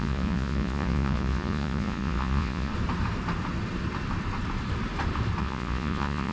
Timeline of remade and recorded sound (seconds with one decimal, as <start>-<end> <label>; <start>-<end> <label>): 0.0-2.7 remade; 2.7-5.4 recorded; 5.4-6.3 remade